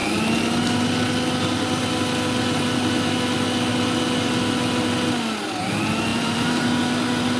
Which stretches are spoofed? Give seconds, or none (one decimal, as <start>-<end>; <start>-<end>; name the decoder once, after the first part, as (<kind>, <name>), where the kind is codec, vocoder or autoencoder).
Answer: 6.1-6.6 (vocoder, BigVGAN v2)